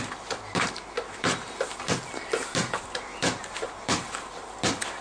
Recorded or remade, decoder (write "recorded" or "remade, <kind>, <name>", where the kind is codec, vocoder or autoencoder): recorded